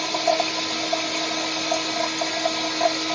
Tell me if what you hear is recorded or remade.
recorded